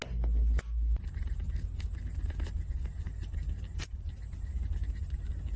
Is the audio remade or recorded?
recorded